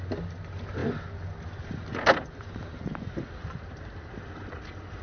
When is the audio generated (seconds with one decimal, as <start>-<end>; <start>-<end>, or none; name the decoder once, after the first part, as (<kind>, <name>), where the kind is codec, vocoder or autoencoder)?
3.4-5.0 (vocoder, BigVGAN v2)